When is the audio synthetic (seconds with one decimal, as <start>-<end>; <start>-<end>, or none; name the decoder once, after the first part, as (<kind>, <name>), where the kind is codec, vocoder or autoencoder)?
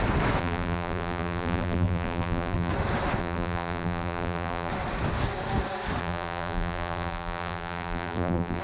0.4-2.7 (vocoder, BigVGAN v2); 3.2-4.7; 6.0-8.6